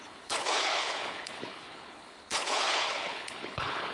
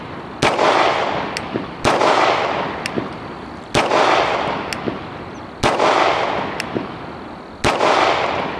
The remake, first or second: first